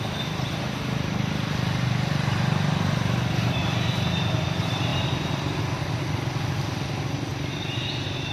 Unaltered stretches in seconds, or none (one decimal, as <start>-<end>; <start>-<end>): 3.6-4.1; 4.9-5.6; 7.3-8.3